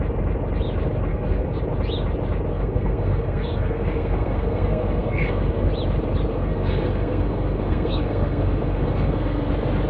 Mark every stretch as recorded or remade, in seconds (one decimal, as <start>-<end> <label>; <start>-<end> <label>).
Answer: 0.0-1.1 recorded; 1.1-1.6 remade; 1.6-2.5 recorded; 2.5-5.7 remade; 5.7-6.3 recorded; 6.3-9.5 remade; 9.5-9.9 recorded